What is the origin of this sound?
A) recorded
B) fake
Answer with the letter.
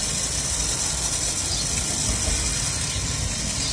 A